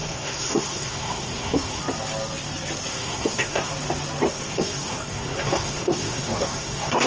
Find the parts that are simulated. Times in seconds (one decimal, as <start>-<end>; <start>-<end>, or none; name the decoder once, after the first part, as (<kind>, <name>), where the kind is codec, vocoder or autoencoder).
0.0-1.8 (codec, SNAC); 2.9-3.7; 4.3-7.1